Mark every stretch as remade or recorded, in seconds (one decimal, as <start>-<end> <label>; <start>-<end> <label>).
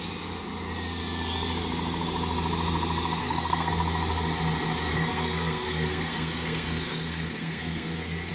0.0-3.2 recorded; 3.2-3.7 remade; 3.7-4.9 recorded; 4.9-8.3 remade